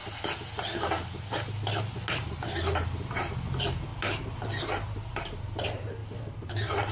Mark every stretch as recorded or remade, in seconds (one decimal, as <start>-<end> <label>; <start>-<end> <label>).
0.0-2.1 recorded; 2.1-6.0 remade; 6.0-6.9 recorded